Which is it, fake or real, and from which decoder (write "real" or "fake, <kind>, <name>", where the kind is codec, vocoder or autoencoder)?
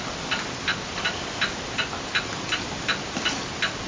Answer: real